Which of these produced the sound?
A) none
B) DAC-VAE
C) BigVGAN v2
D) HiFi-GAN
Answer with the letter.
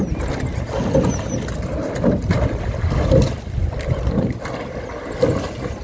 A